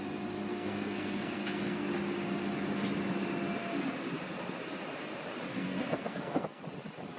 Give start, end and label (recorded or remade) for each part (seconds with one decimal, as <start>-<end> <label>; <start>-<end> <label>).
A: 0.0-0.5 recorded; 0.5-1.9 remade; 1.9-5.5 recorded; 5.5-6.6 remade; 6.6-7.2 recorded

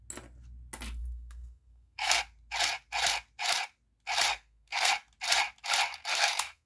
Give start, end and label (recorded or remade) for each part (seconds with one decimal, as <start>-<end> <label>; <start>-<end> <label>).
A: 0.0-1.0 recorded; 1.0-2.2 remade; 2.2-4.3 recorded; 4.3-4.9 remade; 4.9-6.1 recorded; 6.1-6.7 remade

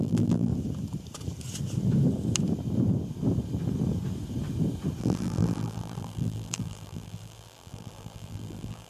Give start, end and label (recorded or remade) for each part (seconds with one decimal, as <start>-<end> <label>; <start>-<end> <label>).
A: 0.0-0.5 remade; 0.5-5.0 recorded; 5.0-8.9 remade

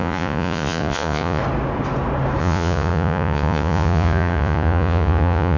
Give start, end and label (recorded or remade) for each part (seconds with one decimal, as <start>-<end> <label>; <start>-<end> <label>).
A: 0.0-1.4 remade; 1.4-2.4 recorded; 2.4-5.6 remade

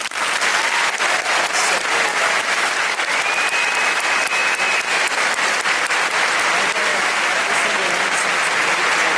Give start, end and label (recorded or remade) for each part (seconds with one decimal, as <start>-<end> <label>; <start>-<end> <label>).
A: 0.0-2.1 recorded; 2.1-2.7 remade; 2.7-6.9 recorded; 6.9-7.5 remade; 7.5-9.2 recorded

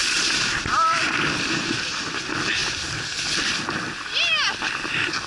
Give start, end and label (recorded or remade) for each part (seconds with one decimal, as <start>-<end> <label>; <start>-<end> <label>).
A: 0.0-0.7 recorded; 0.7-2.6 remade; 2.6-3.4 recorded; 3.4-5.3 remade

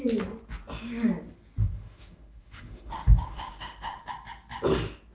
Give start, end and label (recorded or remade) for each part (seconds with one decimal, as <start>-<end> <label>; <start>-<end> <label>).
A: 0.0-1.6 recorded; 1.6-4.1 remade; 4.1-5.1 recorded

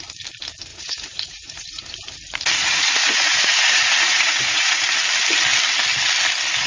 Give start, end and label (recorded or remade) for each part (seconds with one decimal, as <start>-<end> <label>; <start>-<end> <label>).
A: 0.0-0.7 recorded; 0.7-1.8 remade; 1.8-2.6 recorded; 2.6-4.8 remade; 4.8-6.7 recorded